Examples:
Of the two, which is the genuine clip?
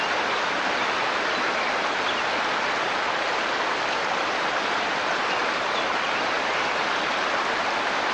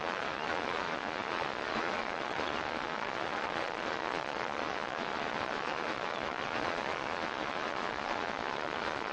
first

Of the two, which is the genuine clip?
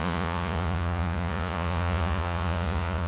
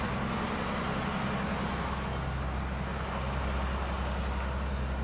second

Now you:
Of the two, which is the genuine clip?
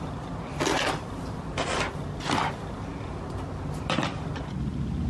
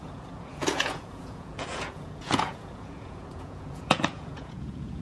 first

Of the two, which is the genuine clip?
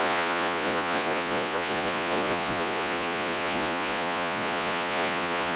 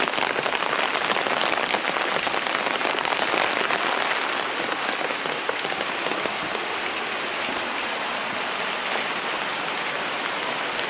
second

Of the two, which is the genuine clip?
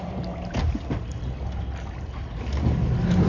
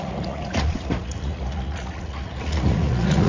first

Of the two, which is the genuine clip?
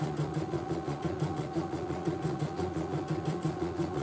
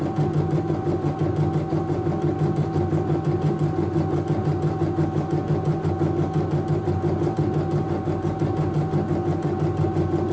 second